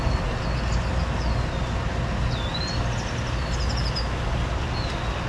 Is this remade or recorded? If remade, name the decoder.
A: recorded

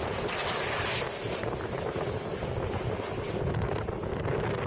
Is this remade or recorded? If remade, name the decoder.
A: recorded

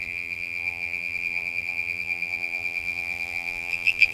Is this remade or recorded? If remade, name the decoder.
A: remade, vocoder, BigVGAN v2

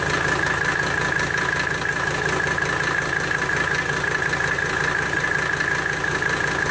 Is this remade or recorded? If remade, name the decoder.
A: recorded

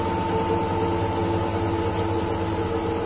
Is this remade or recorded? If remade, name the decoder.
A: recorded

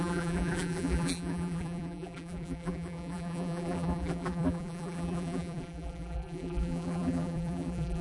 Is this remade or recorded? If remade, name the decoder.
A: remade, vocoder, BigVGAN v2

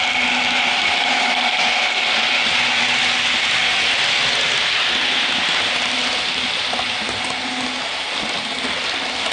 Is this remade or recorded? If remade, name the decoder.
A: recorded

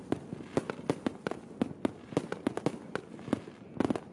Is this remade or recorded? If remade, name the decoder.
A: recorded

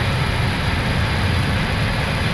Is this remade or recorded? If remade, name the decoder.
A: recorded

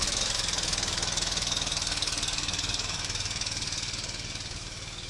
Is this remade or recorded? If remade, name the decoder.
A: remade, codec, DAC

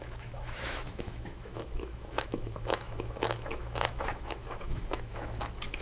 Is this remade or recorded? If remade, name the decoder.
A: remade, autoencoder, DAC-VAE